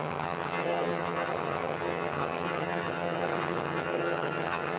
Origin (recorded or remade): remade